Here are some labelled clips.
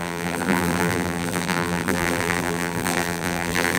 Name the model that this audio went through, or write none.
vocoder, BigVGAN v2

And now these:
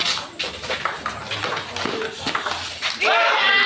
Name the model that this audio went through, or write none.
none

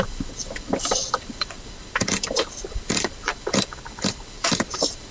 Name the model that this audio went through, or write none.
vocoder, BigVGAN v2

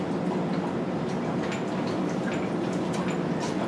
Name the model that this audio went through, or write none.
none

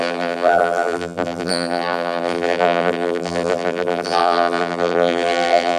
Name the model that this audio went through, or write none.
vocoder, BigVGAN v2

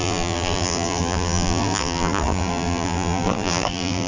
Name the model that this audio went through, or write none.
vocoder, BigVGAN v2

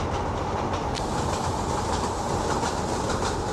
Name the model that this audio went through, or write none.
vocoder, BigVGAN v2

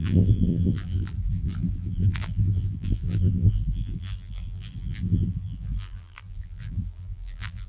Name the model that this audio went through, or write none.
vocoder, BigVGAN v2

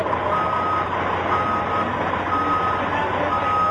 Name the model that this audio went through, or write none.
none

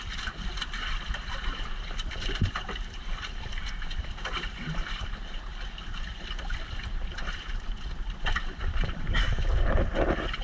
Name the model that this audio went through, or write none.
vocoder, BigVGAN v2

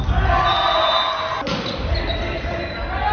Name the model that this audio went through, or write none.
none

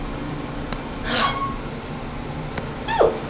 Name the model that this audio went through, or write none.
vocoder, BigVGAN v2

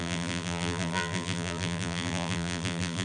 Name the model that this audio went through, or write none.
vocoder, BigVGAN v2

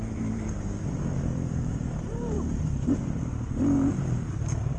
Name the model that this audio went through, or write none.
vocoder, BigVGAN v2